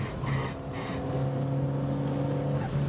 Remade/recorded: recorded